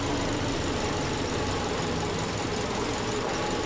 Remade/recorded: recorded